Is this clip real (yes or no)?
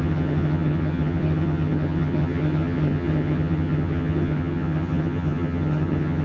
no